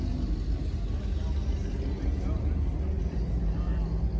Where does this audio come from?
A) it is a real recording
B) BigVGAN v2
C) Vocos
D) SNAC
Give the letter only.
A